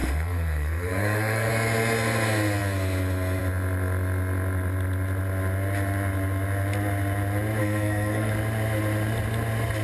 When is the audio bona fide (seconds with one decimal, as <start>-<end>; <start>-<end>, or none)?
1.5-7.6; 8.3-9.8